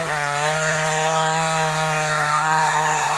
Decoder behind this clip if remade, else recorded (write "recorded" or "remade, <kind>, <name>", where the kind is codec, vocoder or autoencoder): remade, codec, SNAC